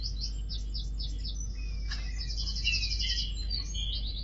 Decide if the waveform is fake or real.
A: real